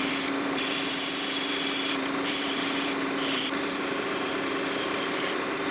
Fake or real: fake